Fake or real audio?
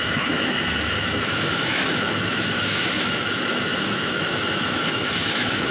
fake